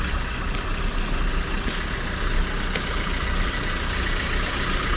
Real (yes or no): yes